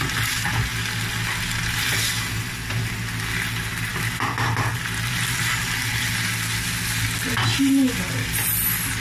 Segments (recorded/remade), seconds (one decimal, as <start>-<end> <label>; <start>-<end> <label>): 0.0-9.0 recorded